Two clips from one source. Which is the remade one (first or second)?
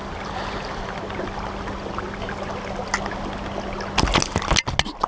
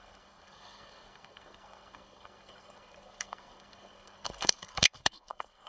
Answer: second